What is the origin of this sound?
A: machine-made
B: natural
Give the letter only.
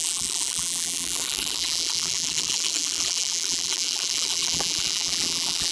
A